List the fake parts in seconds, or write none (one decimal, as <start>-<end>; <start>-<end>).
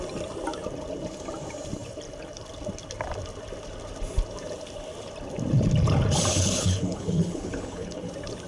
6.3-8.1